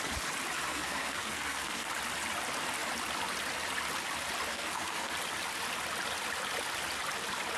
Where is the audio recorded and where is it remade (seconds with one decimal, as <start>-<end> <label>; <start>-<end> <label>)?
0.0-0.7 recorded; 0.7-1.9 remade; 1.9-4.5 recorded; 4.5-5.1 remade; 5.1-7.6 recorded